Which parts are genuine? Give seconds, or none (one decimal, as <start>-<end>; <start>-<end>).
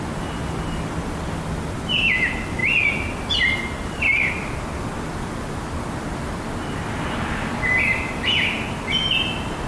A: 0.0-9.7